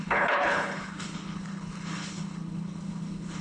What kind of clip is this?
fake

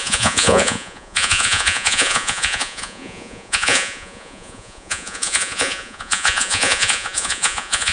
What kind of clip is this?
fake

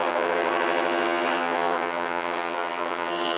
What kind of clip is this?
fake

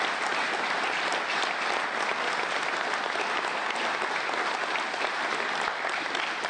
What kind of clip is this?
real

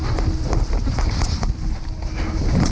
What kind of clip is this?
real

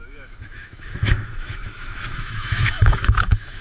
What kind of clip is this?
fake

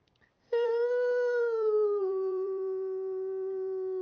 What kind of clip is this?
fake